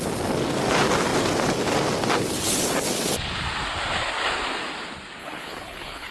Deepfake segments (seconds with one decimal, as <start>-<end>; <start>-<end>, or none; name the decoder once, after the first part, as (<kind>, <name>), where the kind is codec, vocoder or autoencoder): 5.2-6.1 (codec, HILCodec)